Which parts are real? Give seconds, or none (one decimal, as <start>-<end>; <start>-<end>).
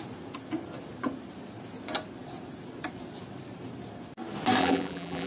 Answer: 0.0-4.6